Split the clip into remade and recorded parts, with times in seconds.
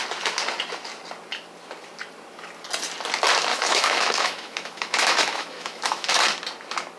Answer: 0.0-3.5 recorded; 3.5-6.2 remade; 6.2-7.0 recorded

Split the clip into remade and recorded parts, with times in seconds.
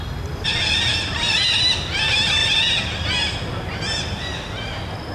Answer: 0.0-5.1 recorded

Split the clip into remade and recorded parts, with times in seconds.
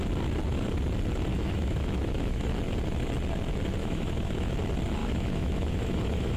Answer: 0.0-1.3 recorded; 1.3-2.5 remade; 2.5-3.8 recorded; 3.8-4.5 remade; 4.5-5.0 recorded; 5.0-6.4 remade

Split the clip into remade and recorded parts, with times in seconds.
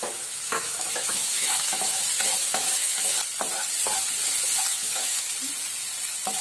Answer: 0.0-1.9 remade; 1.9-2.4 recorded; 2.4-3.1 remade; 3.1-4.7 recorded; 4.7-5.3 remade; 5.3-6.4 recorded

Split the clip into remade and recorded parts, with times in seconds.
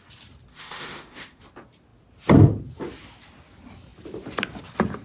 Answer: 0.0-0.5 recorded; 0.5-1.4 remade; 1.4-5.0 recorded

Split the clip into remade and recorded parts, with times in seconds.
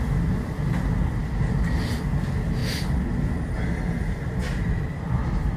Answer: 0.0-5.6 recorded